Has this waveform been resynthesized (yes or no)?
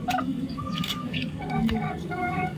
yes